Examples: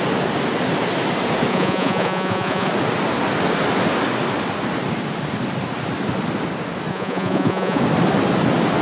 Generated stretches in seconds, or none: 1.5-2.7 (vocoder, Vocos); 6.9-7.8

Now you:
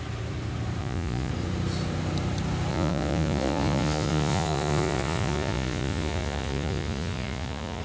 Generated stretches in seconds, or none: 0.8-1.3 (vocoder, Vocos); 2.7-7.8

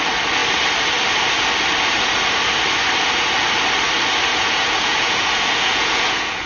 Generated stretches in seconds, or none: 4.3-6.5 (vocoder, Vocos)